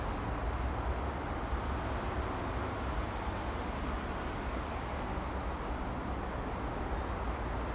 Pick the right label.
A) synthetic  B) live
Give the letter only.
B